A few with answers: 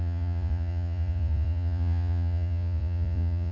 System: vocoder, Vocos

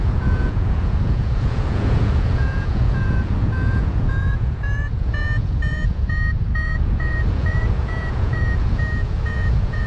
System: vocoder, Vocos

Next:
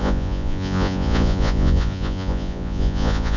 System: vocoder, Vocos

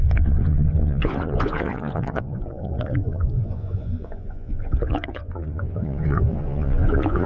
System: vocoder, Vocos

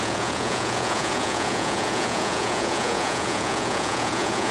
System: vocoder, Vocos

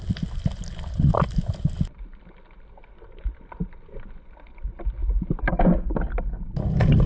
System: none